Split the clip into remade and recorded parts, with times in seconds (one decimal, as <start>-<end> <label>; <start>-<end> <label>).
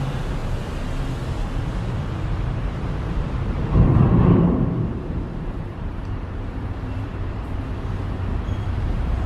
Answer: 0.0-0.4 remade; 0.4-2.0 recorded; 2.0-3.6 remade; 3.6-4.2 recorded; 4.2-9.3 remade